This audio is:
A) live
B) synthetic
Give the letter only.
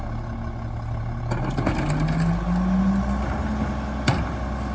A